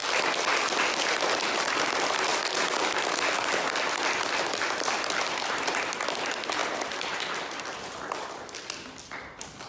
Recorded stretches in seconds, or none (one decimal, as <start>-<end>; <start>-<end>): 0.0-1.0; 2.3-5.1